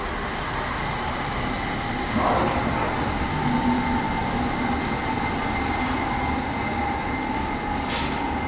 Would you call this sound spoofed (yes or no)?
no